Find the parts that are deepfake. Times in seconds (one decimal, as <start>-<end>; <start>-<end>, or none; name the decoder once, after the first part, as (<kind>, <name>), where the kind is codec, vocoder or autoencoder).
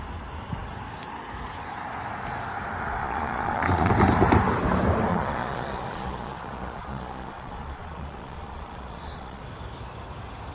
3.0-3.9 (vocoder, Vocos); 5.1-9.4